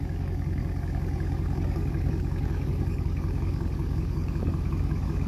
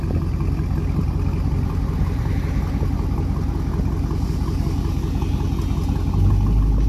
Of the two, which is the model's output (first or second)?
first